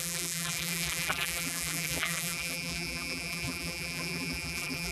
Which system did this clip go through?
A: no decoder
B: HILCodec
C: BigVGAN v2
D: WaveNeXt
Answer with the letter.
C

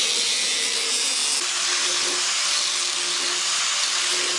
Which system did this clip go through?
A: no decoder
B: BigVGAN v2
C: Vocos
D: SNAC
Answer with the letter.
A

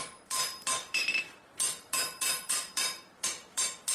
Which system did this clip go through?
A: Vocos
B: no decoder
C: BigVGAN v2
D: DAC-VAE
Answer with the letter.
C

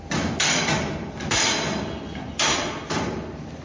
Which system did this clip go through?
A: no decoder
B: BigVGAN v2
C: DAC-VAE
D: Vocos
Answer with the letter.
A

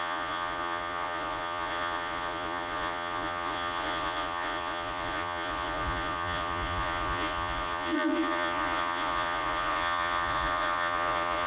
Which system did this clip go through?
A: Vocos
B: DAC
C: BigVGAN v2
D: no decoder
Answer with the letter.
A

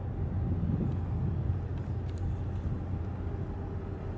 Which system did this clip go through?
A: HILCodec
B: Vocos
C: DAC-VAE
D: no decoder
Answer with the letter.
D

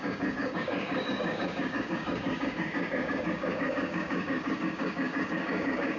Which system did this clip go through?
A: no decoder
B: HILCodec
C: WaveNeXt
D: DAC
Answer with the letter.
D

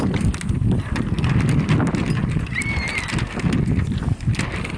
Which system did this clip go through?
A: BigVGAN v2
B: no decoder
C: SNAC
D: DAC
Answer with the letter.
B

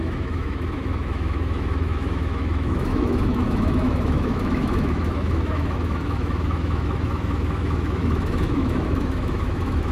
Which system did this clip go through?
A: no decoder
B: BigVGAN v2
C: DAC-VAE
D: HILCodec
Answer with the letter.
C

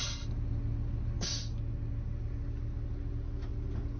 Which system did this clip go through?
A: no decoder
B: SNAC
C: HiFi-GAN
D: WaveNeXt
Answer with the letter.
A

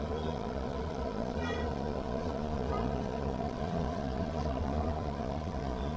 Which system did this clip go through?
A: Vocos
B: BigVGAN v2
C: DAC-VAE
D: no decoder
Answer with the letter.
A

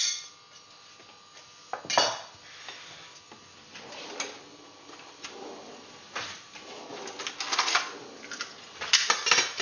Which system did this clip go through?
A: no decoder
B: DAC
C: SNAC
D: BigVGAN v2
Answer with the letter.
A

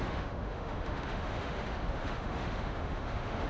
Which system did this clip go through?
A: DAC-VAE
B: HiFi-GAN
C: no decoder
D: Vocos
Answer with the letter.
A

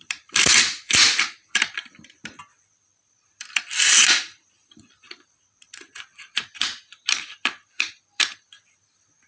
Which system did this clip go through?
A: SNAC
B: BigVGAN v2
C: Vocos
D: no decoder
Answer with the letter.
B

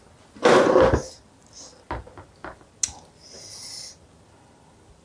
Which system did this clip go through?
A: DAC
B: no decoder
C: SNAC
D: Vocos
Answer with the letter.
B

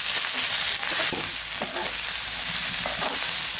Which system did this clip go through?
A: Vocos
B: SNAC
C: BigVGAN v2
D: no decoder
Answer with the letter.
D